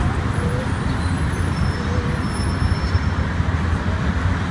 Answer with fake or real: real